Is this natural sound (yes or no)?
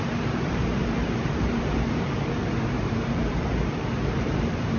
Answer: no